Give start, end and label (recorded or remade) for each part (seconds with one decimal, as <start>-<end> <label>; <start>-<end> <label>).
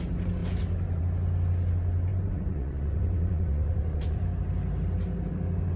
0.0-2.1 recorded; 2.1-4.2 remade; 4.2-5.8 recorded